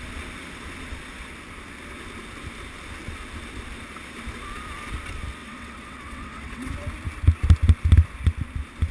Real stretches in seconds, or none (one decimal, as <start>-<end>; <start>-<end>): 0.0-5.4; 6.7-8.9